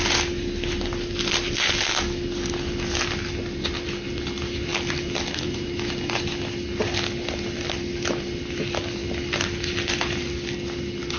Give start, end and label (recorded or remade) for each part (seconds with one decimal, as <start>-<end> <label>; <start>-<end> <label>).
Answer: 0.0-11.2 recorded